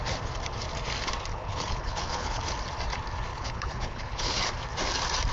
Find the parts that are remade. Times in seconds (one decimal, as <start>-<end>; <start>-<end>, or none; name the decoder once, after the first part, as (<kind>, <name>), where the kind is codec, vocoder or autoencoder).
1.3-2.4 (codec, HILCodec); 3.3-4.5